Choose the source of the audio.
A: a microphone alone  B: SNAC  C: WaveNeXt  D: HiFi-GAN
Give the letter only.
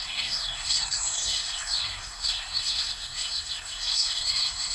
B